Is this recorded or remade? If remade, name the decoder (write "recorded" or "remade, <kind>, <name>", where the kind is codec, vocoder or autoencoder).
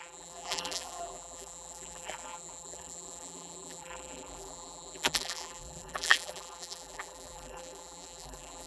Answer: remade, vocoder, BigVGAN v2